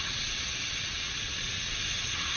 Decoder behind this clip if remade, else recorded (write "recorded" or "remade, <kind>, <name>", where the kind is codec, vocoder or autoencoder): remade, vocoder, WaveNeXt